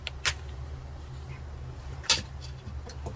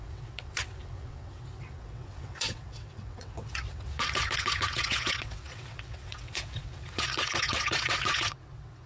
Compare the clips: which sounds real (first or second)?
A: first